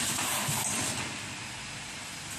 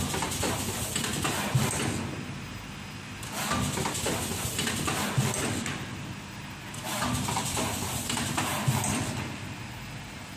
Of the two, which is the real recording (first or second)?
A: second